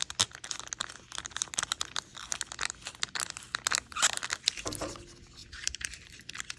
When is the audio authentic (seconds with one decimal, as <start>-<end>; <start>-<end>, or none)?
0.0-5.4; 6.1-6.6